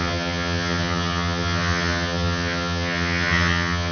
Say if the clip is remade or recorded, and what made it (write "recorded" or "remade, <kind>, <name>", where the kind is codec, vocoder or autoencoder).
remade, vocoder, HiFi-GAN